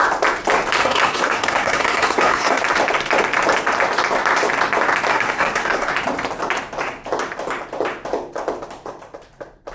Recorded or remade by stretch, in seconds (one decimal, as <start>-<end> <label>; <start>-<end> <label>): 0.0-0.8 recorded; 0.8-2.6 remade; 2.6-5.1 recorded; 5.1-5.9 remade; 5.9-9.7 recorded